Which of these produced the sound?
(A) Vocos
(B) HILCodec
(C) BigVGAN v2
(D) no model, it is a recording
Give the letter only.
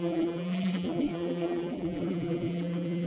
C